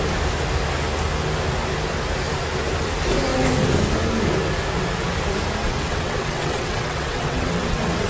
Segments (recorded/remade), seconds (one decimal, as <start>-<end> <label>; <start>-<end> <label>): 0.0-5.6 recorded; 5.6-8.1 remade